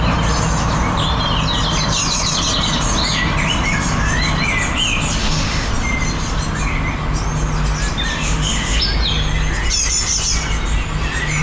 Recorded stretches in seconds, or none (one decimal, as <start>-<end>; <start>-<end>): 0.0-5.2; 5.7-8.1; 8.8-11.4